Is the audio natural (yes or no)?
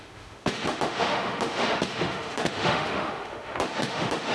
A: no